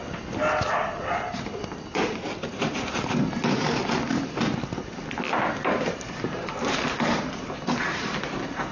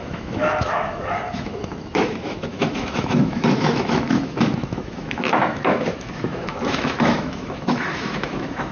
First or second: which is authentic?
first